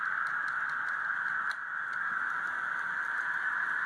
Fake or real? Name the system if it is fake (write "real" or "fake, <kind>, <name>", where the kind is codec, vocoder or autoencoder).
real